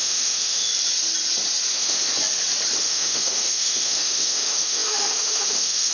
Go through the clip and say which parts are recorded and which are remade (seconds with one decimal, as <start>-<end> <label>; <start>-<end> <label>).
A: 0.0-0.7 remade; 0.7-1.7 recorded; 1.7-2.1 remade; 2.1-2.8 recorded; 2.8-5.9 remade